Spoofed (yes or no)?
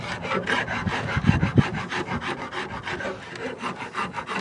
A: no